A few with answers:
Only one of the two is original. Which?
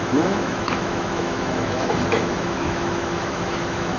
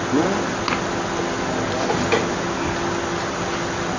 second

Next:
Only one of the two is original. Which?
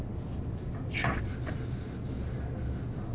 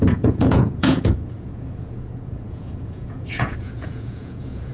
first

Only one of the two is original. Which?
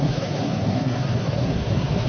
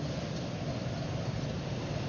second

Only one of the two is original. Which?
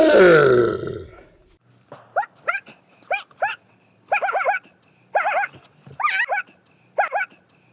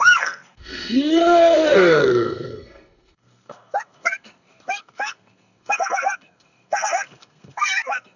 first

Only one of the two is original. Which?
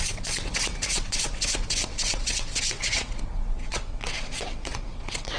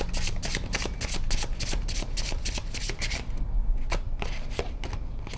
second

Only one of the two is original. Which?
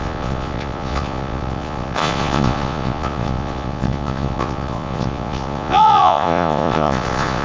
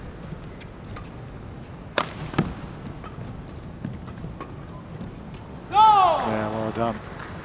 second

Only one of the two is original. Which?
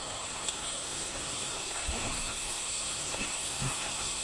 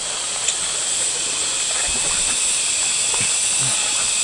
second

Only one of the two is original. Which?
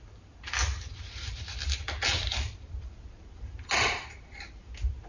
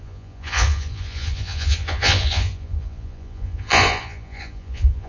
first